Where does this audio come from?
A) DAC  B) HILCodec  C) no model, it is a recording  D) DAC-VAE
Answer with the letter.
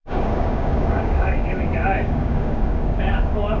A